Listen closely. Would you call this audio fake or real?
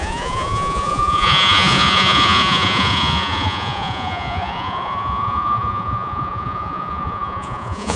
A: fake